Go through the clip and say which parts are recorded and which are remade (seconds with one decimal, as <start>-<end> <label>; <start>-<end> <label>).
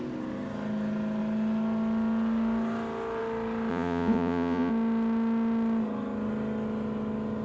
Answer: 0.0-3.7 recorded; 3.7-4.7 remade; 4.7-7.4 recorded